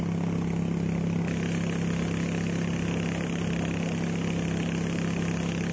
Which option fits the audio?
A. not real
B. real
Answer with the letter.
B